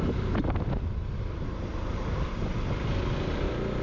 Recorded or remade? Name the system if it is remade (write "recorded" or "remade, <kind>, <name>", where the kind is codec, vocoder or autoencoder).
recorded